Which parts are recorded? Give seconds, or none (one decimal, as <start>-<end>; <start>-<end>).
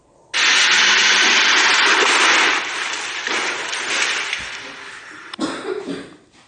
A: 0.0-6.5